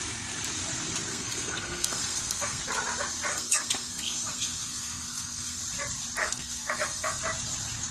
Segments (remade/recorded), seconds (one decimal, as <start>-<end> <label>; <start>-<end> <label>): 0.0-1.1 recorded; 1.1-2.6 remade; 2.6-3.3 recorded; 3.3-5.6 remade; 5.6-6.2 recorded; 6.2-7.2 remade; 7.2-7.9 recorded